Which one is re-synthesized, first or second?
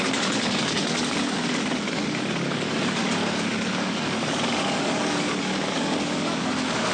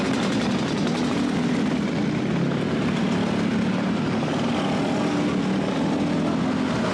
first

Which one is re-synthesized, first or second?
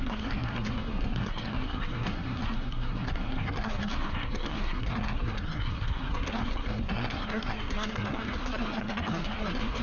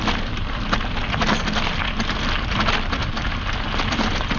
first